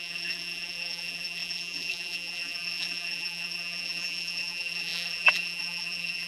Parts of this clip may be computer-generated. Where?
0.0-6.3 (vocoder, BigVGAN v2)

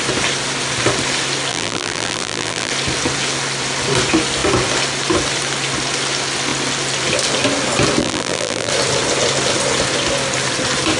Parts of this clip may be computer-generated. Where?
1.5-2.7 (vocoder, BigVGAN v2); 8.0-8.7

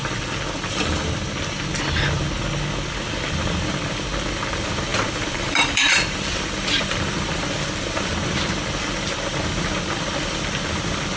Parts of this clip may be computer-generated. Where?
0.0-1.6 (vocoder, BigVGAN v2); 4.9-8.1

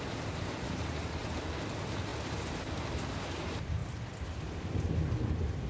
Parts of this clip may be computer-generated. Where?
none